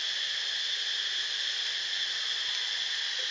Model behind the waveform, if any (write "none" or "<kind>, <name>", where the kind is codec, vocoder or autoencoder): none